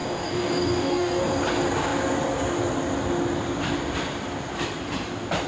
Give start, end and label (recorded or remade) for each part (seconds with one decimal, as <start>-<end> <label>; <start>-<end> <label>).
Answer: 0.0-1.2 remade; 1.2-5.5 recorded